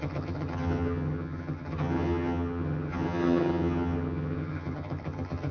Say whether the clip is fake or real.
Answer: fake